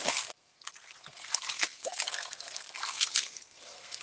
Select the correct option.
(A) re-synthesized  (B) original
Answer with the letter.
A